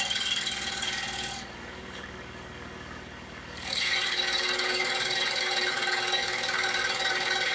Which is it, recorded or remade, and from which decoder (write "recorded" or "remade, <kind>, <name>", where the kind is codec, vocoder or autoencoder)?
remade, codec, DAC